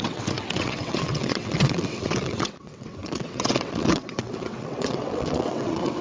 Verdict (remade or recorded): remade